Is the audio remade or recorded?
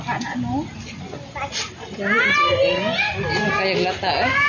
recorded